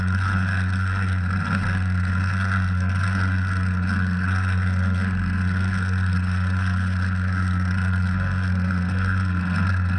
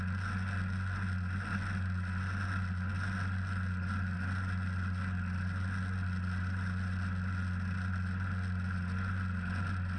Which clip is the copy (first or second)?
first